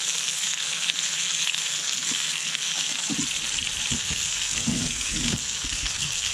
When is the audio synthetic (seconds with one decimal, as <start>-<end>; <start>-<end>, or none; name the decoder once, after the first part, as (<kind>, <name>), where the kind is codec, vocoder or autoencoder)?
0.0-3.1 (codec, SNAC); 3.9-6.3